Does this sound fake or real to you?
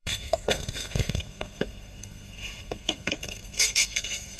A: fake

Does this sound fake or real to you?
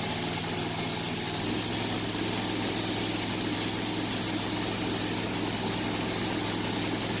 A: real